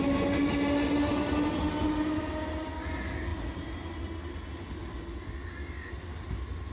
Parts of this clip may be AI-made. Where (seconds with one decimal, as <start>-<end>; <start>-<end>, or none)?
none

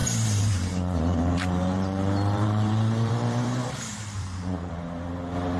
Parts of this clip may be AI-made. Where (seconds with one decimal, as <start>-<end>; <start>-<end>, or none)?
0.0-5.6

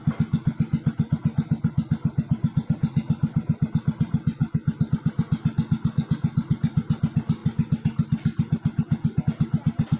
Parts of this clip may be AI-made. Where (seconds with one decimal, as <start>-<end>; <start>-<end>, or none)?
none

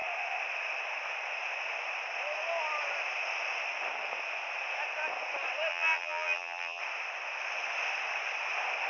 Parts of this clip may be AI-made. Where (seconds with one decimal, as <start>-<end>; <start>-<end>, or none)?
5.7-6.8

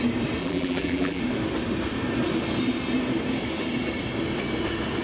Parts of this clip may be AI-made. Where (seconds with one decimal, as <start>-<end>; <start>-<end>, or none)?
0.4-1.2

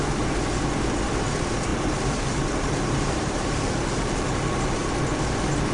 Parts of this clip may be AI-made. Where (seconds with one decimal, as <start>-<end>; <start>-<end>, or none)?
1.7-4.9